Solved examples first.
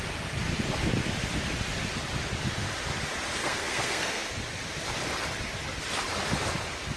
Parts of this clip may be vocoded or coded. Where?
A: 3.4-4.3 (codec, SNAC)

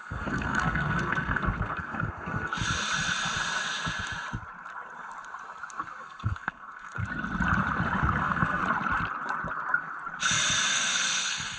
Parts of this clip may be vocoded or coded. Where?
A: 0.0-2.5 (codec, SNAC); 6.0-7.0; 8.2-8.6; 10.7-11.6